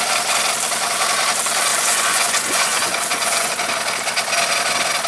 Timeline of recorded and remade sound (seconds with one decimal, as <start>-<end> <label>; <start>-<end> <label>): 0.0-1.7 recorded; 1.7-3.7 remade; 3.7-5.1 recorded